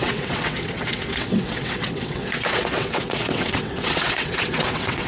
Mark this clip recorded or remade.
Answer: remade